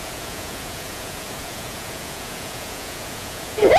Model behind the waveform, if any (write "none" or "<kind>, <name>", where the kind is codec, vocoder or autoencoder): vocoder, Vocos